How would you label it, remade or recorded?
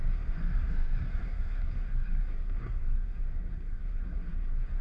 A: remade